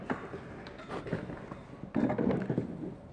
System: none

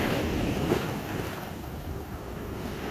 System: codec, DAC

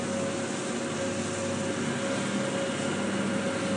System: none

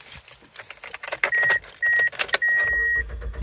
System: none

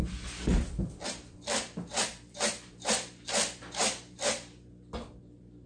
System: none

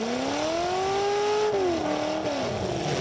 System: none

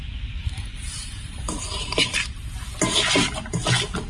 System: none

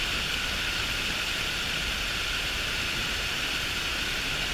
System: none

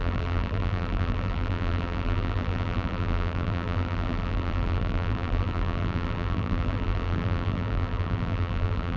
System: vocoder, BigVGAN v2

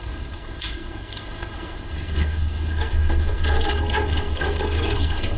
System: codec, SNAC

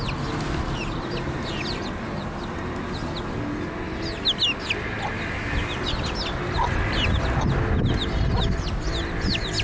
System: none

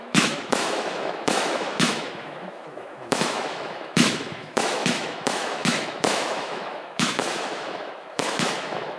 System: autoencoder, DAC-VAE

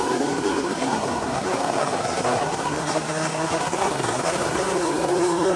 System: codec, SNAC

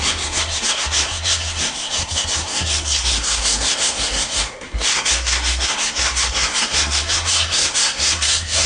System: codec, SNAC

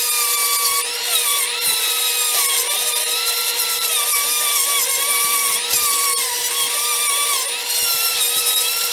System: none